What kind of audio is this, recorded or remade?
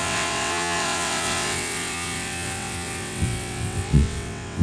remade